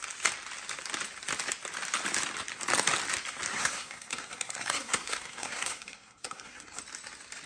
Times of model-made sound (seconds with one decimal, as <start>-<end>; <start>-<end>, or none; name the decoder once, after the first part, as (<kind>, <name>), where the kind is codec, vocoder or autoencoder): 3.5-6.8 (codec, SNAC)